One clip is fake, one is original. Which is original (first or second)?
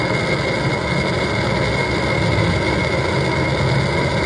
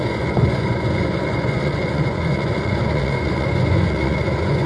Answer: first